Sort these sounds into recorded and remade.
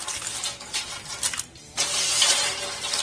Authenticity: recorded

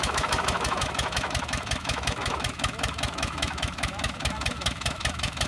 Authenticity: remade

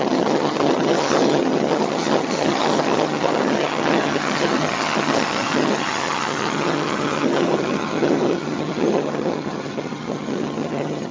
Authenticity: remade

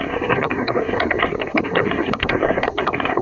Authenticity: remade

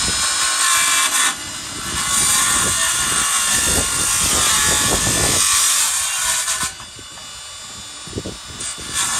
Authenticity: recorded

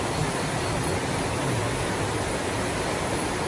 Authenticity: recorded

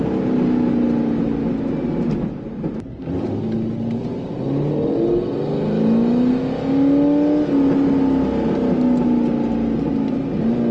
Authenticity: recorded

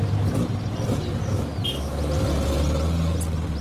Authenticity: recorded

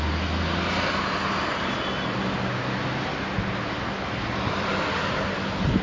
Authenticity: recorded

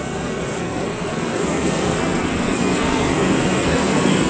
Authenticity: remade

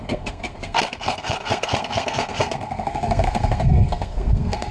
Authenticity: remade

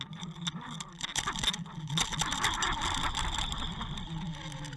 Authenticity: recorded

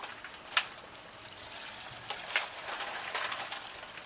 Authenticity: recorded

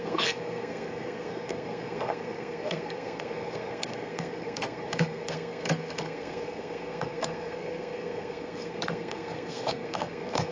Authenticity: remade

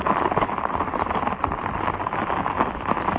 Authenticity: recorded